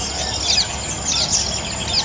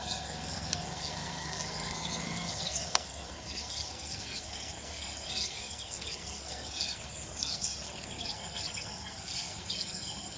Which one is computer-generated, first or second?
second